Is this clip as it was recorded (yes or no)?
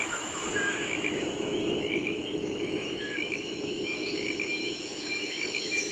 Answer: no